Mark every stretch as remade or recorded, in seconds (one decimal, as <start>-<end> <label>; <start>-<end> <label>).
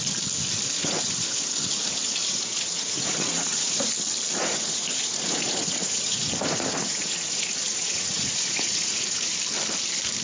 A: 0.0-0.8 recorded; 0.8-3.9 remade; 3.9-4.4 recorded; 4.4-9.3 remade; 9.3-10.2 recorded